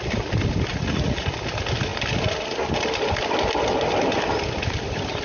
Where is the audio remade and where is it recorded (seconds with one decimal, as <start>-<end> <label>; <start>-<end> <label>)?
0.0-0.7 recorded; 0.7-1.3 remade; 1.3-5.2 recorded